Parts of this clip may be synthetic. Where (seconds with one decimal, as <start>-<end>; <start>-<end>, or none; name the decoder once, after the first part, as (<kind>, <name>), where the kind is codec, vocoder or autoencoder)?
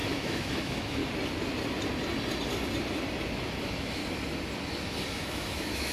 0.0-1.0 (autoencoder, DAC-VAE); 3.6-4.0; 5.1-5.9